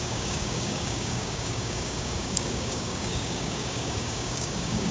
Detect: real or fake fake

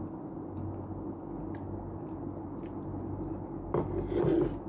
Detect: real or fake real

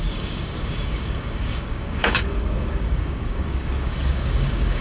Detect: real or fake fake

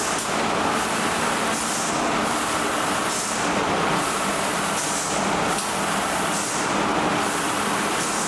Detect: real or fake real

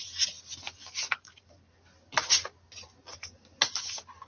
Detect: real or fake real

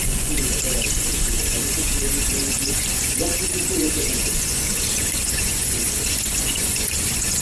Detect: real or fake fake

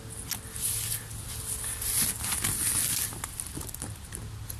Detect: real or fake real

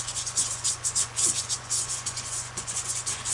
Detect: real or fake fake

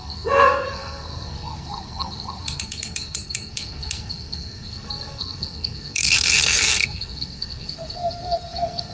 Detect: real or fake fake